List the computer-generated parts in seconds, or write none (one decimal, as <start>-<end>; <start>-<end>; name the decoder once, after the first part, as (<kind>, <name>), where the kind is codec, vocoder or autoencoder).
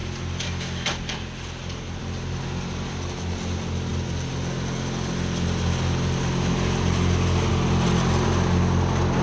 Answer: none